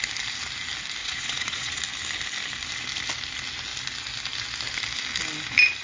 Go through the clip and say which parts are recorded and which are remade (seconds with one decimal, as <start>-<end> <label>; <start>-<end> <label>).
0.0-1.0 recorded; 1.0-1.8 remade; 1.8-5.8 recorded

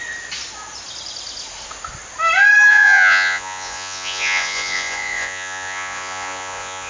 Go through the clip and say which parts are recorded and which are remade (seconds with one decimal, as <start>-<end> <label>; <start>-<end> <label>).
0.0-2.7 recorded; 2.7-6.9 remade

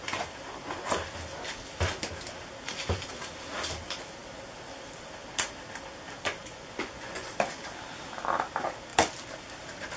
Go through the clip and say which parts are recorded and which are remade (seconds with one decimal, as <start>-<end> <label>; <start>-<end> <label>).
0.0-6.4 recorded; 6.4-7.3 remade; 7.3-10.0 recorded

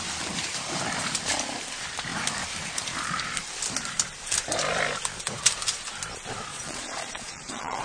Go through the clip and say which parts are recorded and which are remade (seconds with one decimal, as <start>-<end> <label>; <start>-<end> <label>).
0.0-6.5 recorded; 6.5-7.8 remade

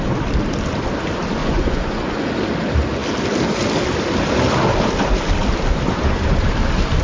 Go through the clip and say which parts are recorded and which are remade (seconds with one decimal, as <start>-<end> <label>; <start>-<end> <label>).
0.0-1.4 recorded; 1.4-2.3 remade; 2.3-7.0 recorded

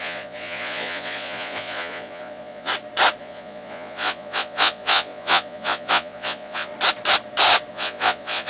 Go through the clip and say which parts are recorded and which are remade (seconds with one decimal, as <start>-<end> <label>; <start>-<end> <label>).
0.0-2.7 remade; 2.7-3.2 recorded; 3.2-6.7 remade; 6.7-7.7 recorded; 7.7-8.5 remade

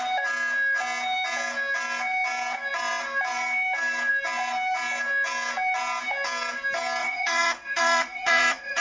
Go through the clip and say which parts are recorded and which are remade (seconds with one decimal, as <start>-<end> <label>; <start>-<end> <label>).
0.0-7.0 recorded; 7.0-8.8 remade